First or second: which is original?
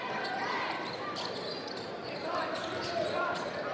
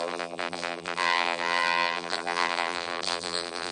first